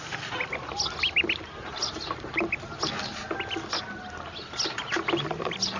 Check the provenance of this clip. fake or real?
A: real